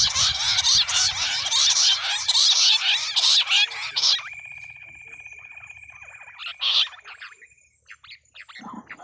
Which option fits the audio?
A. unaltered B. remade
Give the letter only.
A